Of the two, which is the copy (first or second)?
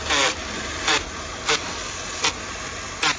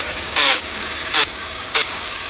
second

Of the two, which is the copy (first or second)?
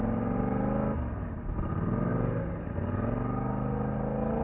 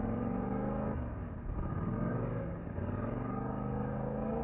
second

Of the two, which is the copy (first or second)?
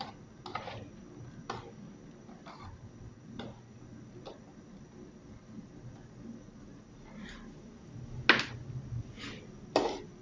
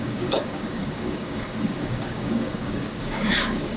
second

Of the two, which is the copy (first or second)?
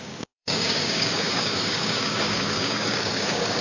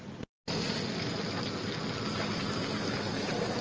first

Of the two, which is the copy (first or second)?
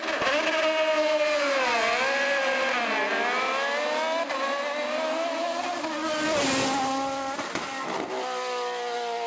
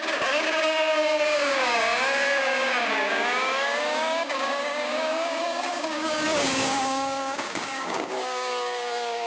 second